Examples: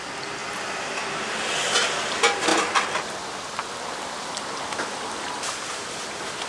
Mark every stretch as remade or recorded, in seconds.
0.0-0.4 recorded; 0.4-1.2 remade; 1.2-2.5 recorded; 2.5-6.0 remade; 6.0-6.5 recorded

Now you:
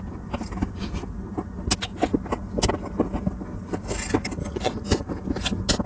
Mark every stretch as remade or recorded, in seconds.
0.0-4.4 recorded; 4.4-5.1 remade; 5.1-5.9 recorded

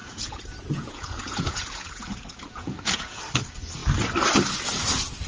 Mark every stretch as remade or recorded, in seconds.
0.0-3.2 remade; 3.2-5.3 recorded